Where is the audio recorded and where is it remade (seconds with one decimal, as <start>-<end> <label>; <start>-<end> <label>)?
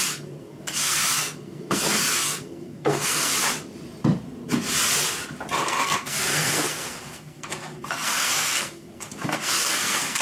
0.0-3.3 remade; 3.3-5.6 recorded; 5.6-10.2 remade